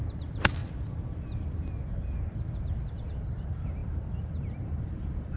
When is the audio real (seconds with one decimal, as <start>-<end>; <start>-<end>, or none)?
0.0-5.4